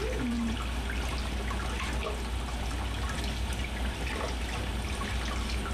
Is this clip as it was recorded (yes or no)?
yes